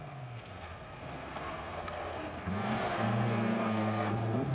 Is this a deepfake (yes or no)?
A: yes